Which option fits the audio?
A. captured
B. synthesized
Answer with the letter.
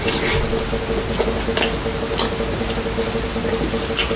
A